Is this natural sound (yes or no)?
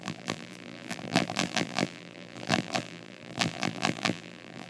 no